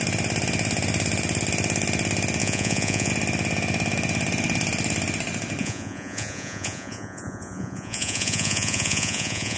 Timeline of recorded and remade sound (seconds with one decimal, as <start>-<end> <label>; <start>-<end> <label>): 0.0-2.4 recorded; 2.4-3.1 remade; 3.1-5.6 recorded; 5.6-9.6 remade